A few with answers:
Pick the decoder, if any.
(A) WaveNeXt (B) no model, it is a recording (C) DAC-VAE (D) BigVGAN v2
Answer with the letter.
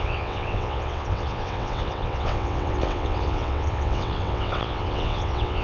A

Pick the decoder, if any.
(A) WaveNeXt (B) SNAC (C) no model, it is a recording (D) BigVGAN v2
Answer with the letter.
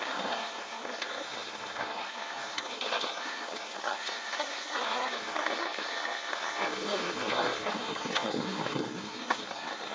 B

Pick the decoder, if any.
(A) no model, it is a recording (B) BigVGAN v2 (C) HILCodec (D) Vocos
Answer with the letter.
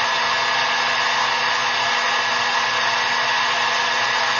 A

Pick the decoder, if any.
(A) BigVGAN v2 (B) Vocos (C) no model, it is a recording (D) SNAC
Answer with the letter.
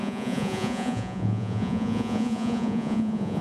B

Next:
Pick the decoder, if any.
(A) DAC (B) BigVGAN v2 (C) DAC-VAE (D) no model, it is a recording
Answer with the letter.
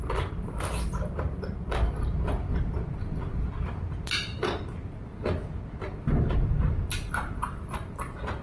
B